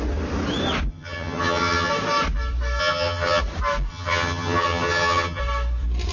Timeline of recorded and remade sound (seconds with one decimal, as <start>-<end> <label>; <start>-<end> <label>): 0.0-0.9 recorded; 0.9-1.9 remade; 1.9-2.8 recorded; 2.8-3.4 remade; 3.4-3.9 recorded; 3.9-5.4 remade; 5.4-6.1 recorded